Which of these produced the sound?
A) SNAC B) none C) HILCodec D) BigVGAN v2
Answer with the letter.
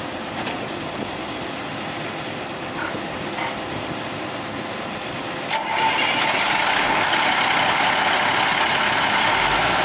B